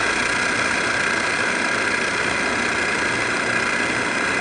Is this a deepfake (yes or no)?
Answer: no